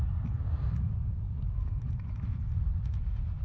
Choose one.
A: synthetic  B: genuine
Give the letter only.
B